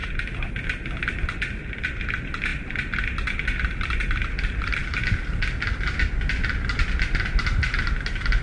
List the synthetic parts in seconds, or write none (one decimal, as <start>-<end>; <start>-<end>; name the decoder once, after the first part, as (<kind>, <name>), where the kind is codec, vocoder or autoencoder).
none